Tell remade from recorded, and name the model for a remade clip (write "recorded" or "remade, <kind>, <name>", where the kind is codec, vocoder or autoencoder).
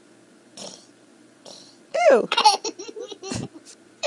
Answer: remade, vocoder, Vocos